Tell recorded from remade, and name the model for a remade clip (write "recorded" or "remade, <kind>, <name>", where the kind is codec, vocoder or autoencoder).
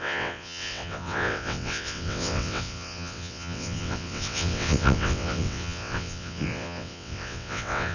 remade, vocoder, WaveNeXt